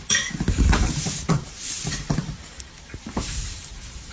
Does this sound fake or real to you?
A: fake